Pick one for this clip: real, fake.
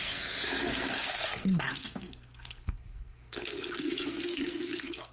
fake